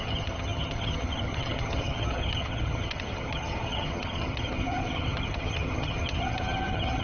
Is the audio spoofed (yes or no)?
yes